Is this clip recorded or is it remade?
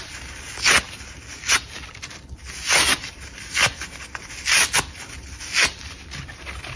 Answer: recorded